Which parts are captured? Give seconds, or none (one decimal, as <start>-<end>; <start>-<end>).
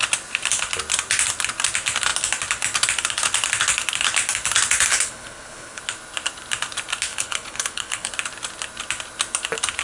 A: 0.0-4.9; 5.8-7.1; 8.1-9.8